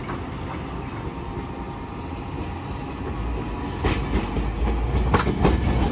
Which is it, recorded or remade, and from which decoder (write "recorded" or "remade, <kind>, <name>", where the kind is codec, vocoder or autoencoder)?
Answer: recorded